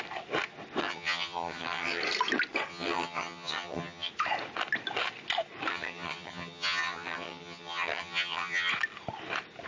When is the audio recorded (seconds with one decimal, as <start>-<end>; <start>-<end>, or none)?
0.0-0.8; 2.0-2.7; 4.1-5.7; 8.7-9.7

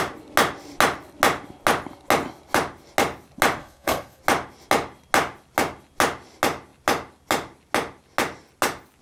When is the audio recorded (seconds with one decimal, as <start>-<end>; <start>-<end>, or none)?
0.0-3.6; 4.2-9.0

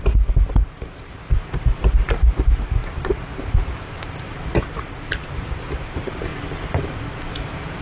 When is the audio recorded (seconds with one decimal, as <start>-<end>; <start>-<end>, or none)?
6.3-7.3